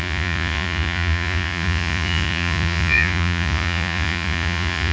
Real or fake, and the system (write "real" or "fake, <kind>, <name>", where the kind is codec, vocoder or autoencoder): fake, vocoder, Vocos